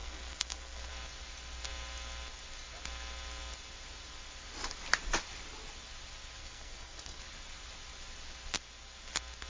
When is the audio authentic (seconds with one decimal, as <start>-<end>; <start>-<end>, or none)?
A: 0.9-6.4; 7.2-9.5